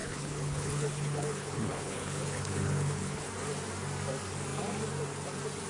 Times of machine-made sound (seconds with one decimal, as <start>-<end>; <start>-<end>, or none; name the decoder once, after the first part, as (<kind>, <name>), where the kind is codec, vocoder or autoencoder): 0.0-3.3 (codec, HILCodec)